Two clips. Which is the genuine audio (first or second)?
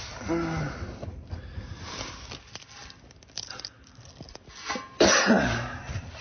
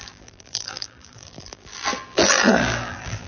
first